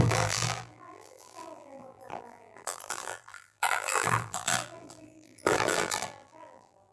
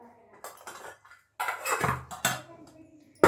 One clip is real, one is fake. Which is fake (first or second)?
first